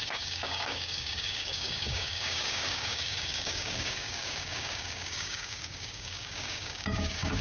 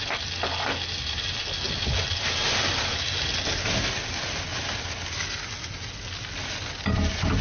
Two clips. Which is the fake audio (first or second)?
first